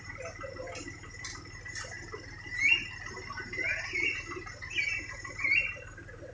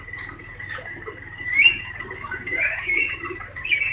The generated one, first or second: second